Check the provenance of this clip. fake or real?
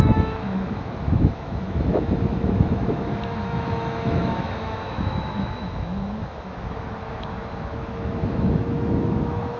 fake